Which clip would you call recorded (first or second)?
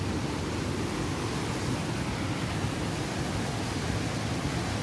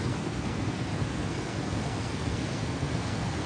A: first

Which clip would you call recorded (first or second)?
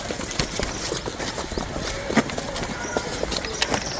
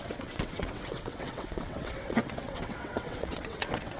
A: first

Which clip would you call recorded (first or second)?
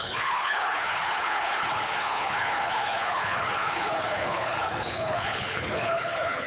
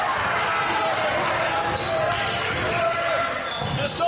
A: second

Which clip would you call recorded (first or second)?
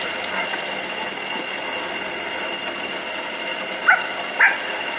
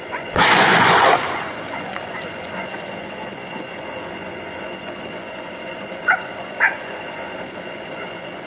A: first